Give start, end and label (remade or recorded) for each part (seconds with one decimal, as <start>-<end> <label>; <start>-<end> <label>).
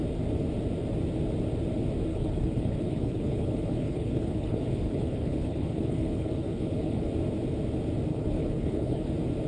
0.0-2.1 recorded; 2.1-7.1 remade; 7.1-8.1 recorded; 8.1-9.1 remade; 9.1-9.5 recorded